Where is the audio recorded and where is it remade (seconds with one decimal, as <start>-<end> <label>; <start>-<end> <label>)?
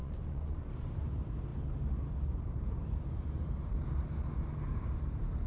0.0-0.7 remade; 0.7-5.5 recorded